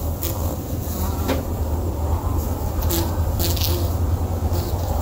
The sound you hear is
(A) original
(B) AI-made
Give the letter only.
A